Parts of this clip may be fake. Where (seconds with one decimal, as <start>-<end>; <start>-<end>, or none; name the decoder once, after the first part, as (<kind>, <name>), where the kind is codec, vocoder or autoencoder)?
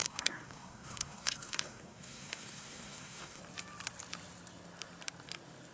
0.0-3.4 (codec, SNAC)